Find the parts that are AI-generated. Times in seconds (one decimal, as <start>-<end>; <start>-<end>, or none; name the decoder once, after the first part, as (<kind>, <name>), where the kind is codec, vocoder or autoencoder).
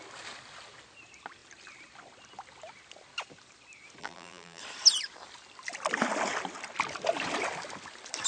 4.0-4.6 (vocoder, BigVGAN v2)